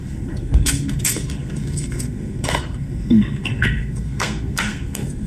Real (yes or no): no